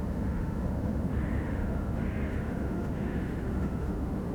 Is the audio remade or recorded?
remade